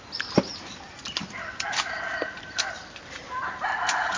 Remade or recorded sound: remade